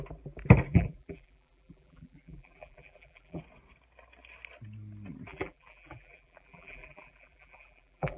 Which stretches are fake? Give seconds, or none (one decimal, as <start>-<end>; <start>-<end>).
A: 0.7-3.4; 5.3-8.2